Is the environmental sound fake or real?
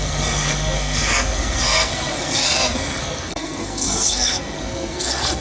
fake